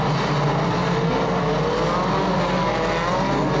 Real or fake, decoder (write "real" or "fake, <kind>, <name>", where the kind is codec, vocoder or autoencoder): real